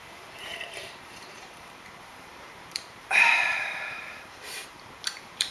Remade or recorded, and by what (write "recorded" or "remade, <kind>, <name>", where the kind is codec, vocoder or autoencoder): remade, vocoder, BigVGAN v2